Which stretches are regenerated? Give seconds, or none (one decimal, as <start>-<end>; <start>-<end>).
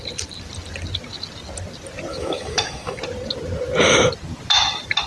2.1-3.0